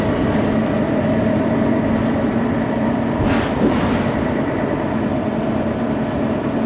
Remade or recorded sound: remade